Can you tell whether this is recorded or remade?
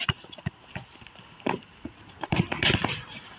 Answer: remade